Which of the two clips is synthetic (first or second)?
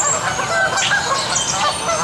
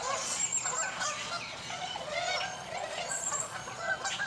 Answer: second